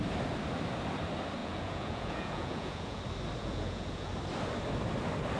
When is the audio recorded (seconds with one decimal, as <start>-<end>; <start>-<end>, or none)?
0.0-1.4; 3.0-3.4; 4.1-5.4

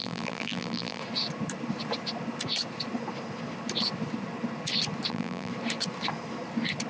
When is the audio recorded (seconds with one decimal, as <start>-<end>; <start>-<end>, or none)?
1.0-5.1; 5.5-6.9

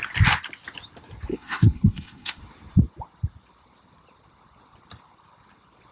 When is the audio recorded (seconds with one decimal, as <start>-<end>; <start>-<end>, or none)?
0.0-1.3; 2.4-5.9

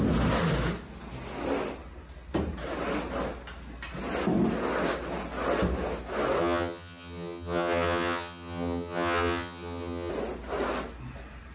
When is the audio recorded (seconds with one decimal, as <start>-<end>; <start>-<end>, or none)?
0.0-6.4; 10.1-11.5

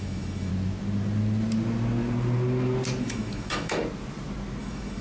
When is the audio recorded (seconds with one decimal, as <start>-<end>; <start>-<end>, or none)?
0.5-3.0; 3.8-4.6

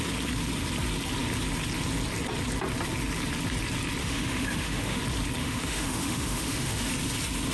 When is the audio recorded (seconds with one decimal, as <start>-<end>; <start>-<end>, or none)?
0.0-4.0; 5.0-5.4; 6.9-7.5

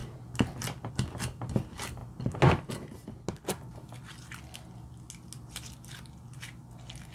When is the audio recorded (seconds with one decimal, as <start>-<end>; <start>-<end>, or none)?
0.0-7.1